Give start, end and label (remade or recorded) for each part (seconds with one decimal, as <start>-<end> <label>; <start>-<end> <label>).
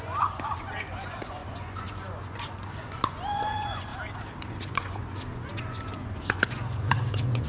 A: 0.0-3.9 remade; 3.9-4.5 recorded; 4.5-7.5 remade